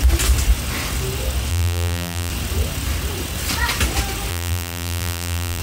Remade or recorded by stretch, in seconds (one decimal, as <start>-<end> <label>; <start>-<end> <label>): 0.0-1.5 recorded; 1.5-2.3 remade; 2.3-4.3 recorded; 4.3-5.6 remade